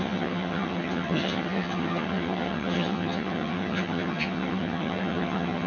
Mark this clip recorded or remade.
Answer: remade